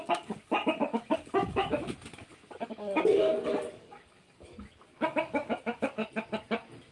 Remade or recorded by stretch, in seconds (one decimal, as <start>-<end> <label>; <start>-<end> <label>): 0.0-1.7 remade; 1.7-2.6 recorded; 2.6-6.0 remade; 6.0-6.9 recorded